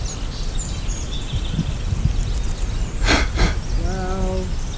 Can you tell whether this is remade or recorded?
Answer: recorded